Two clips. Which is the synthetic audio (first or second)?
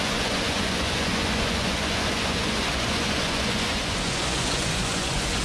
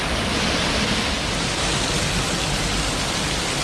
first